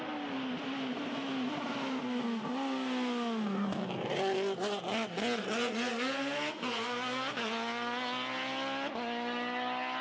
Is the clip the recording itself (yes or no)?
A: yes